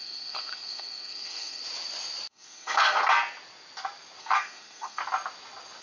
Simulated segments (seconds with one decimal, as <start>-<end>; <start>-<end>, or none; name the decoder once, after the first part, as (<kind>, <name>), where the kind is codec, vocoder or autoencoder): 0.0-1.6 (codec, SNAC); 2.3-3.0; 4.2-5.0

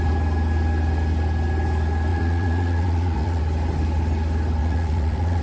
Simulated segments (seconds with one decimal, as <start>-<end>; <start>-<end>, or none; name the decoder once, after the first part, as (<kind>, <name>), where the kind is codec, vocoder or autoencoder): 2.1-3.4 (vocoder, Vocos); 4.6-5.4

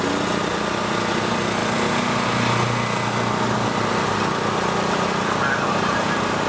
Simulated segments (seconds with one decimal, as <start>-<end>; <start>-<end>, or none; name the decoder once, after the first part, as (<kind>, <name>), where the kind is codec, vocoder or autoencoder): none

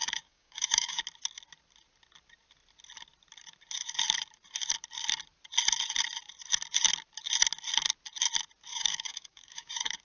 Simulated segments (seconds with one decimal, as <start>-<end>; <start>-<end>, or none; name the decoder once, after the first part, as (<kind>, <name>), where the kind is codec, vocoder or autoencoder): 0.0-1.0 (codec, DAC); 8.7-10.0

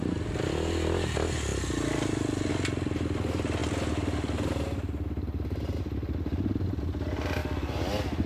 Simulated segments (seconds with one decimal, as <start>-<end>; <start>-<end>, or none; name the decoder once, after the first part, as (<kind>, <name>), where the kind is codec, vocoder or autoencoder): none

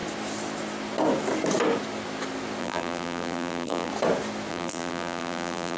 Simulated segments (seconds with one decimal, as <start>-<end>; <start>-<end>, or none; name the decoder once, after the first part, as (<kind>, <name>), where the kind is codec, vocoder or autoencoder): 2.6-3.9 (vocoder, BigVGAN v2); 4.5-5.8

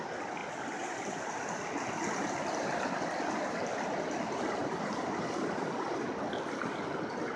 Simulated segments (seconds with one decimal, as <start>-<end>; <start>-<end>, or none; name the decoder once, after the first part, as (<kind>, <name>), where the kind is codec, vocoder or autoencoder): none

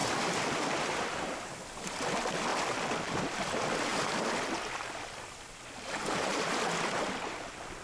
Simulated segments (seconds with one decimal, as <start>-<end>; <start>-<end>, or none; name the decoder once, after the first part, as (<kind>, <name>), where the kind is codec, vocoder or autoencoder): 2.5-3.2 (vocoder, BigVGAN v2); 3.9-5.4